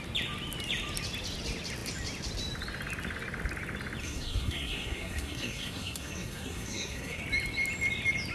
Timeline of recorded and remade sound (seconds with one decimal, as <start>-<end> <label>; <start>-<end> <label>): 0.0-4.0 recorded; 4.0-7.2 remade; 7.2-8.3 recorded